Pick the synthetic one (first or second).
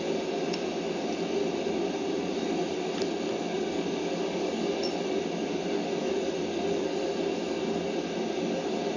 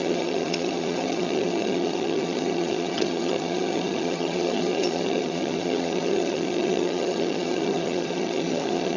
second